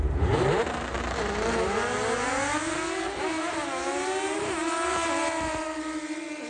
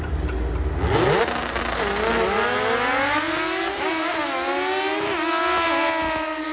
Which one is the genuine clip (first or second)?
second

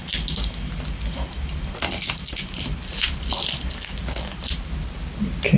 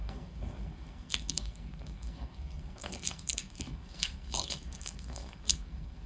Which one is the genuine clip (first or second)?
first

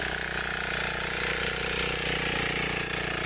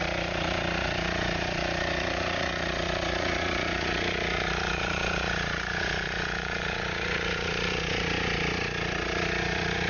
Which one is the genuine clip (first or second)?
first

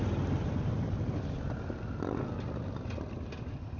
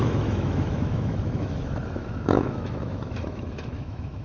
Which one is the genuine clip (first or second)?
first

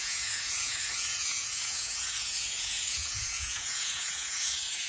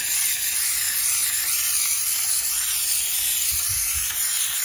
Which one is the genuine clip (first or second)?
second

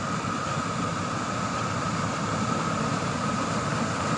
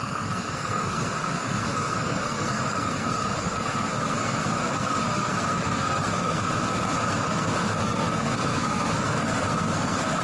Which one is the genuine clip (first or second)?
first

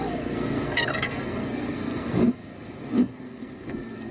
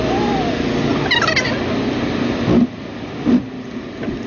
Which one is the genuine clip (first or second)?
second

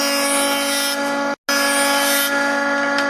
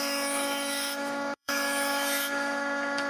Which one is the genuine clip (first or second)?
first